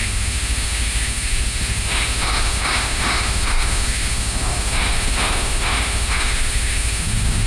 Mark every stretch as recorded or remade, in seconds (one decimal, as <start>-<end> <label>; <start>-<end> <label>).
0.0-7.5 remade